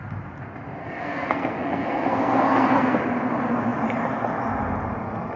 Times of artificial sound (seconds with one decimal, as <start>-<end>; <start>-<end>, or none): 0.8-3.0